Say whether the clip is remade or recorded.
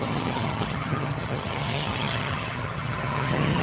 remade